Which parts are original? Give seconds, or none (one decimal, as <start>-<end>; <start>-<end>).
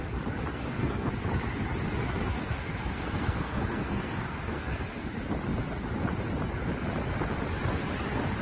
0.0-0.5; 1.1-2.3; 5.1-8.4